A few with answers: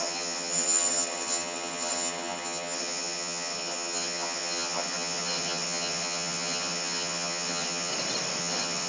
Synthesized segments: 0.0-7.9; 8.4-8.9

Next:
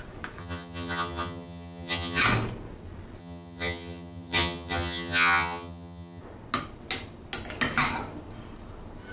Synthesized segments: 0.4-2.2; 3.2-6.2

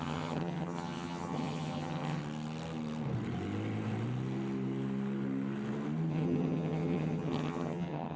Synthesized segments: 0.0-2.2; 6.1-8.2

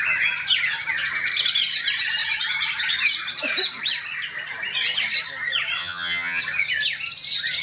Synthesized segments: 5.8-6.4